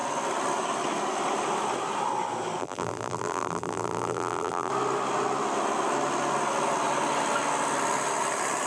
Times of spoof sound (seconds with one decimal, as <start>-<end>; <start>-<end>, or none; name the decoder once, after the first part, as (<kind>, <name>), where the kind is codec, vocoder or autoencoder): 2.6-4.7 (vocoder, BigVGAN v2)